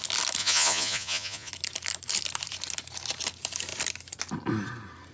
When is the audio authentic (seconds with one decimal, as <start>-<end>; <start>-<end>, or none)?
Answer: 0.0-0.4; 1.5-5.1